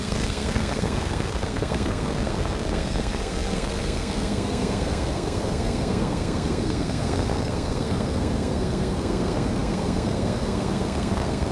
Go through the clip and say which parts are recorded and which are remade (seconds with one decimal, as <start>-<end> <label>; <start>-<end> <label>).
0.0-11.5 remade